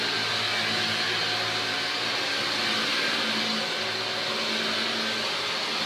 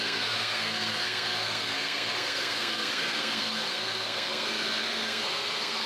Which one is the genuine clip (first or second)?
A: first